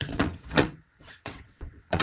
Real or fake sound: fake